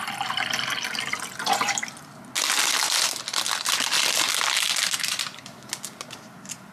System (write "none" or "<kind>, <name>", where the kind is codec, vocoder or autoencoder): none